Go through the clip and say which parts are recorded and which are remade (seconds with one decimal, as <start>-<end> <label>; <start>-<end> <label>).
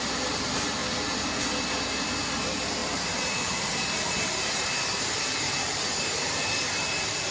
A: 0.0-0.8 remade; 0.8-2.2 recorded; 2.2-7.3 remade